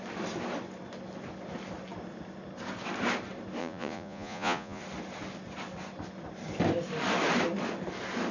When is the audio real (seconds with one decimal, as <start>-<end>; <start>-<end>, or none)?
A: 0.0-3.6; 4.8-8.3